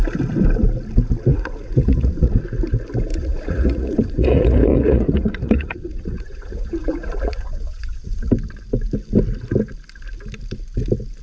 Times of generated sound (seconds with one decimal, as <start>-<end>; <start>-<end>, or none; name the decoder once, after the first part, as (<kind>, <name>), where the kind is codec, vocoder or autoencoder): 1.3-2.3 (vocoder, Vocos); 3.1-8.3